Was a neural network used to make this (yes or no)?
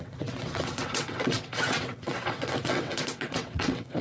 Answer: yes